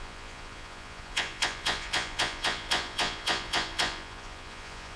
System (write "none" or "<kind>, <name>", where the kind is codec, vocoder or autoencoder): vocoder, Vocos